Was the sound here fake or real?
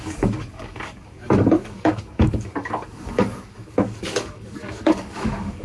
fake